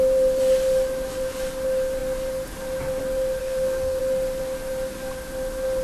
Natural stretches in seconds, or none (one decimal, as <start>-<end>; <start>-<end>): 0.0-3.4; 4.0-5.8